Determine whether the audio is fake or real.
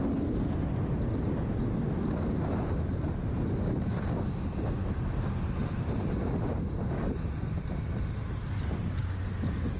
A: real